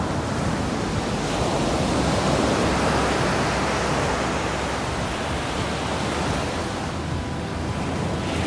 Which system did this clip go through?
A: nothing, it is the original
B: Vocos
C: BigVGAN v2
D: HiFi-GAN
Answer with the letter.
A